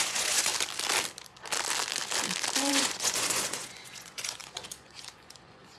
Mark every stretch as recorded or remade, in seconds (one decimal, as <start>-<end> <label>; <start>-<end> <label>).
0.0-0.5 remade; 0.5-2.7 recorded; 2.7-5.8 remade

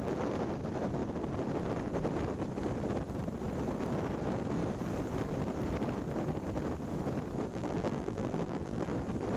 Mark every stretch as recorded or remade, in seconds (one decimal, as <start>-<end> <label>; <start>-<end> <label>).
0.0-7.5 recorded; 7.5-8.9 remade; 8.9-9.4 recorded

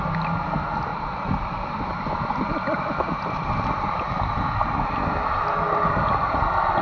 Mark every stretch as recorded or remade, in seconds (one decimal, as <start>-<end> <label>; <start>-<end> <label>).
0.0-0.9 recorded; 0.9-5.0 remade; 5.0-6.8 recorded

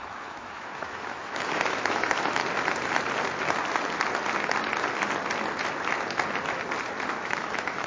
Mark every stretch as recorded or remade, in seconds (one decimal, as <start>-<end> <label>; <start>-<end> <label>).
0.0-2.4 remade; 2.4-7.1 recorded; 7.1-7.9 remade

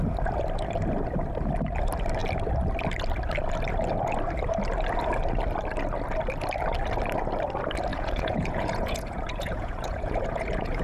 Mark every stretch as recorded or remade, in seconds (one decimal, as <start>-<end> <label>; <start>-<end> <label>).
0.0-7.9 recorded; 7.9-10.8 remade

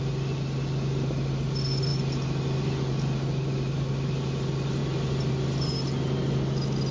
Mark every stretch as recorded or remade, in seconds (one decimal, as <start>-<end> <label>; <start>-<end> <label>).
0.0-6.9 recorded

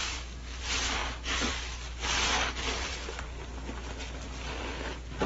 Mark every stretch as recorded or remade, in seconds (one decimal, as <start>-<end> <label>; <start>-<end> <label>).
0.0-0.6 remade; 0.6-5.3 recorded

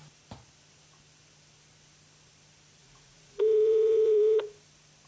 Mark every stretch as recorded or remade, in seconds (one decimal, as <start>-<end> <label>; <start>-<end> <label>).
0.0-2.8 recorded; 2.8-4.4 remade; 4.4-5.1 recorded